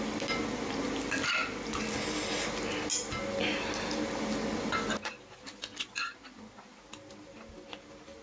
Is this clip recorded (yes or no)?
yes